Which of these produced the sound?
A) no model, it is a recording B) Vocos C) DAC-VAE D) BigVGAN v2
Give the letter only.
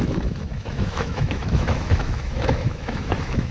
C